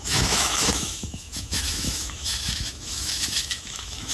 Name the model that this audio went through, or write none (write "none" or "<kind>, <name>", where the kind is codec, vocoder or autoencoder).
autoencoder, DAC-VAE